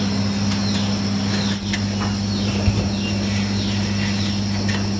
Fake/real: real